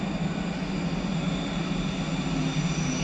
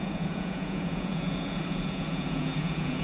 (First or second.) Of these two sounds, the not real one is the second